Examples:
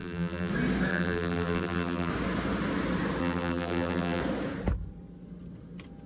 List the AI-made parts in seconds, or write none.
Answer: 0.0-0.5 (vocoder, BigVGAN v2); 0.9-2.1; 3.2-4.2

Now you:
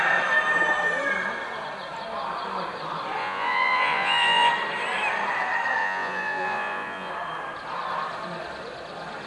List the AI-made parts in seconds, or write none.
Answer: 3.2-4.5 (vocoder, Vocos); 5.8-7.1

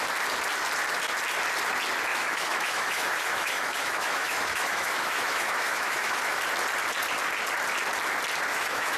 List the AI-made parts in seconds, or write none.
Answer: 2.1-6.4 (autoencoder, DAC-VAE); 8.5-9.0

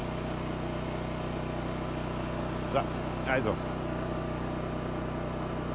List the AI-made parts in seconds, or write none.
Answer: none

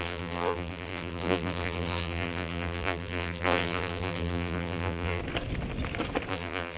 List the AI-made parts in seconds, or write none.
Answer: 0.0-5.2 (vocoder, BigVGAN v2); 6.3-6.8

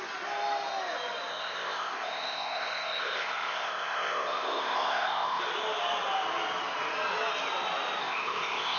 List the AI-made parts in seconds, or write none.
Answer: 1.3-5.4 (codec, ZipCodec); 8.0-8.8

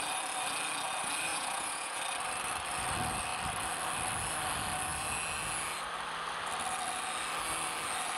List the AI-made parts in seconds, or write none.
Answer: 1.3-2.0 (vocoder, Vocos)